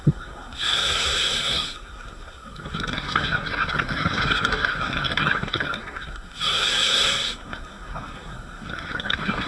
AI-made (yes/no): yes